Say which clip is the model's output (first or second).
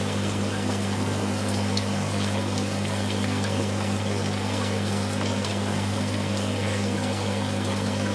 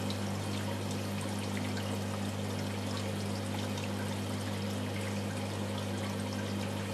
first